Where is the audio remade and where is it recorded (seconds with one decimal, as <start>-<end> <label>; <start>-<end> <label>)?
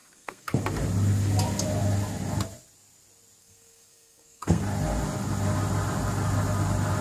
0.0-0.6 remade; 0.6-3.4 recorded; 3.4-4.6 remade; 4.6-7.0 recorded